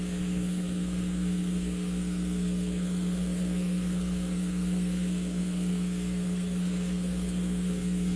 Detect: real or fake fake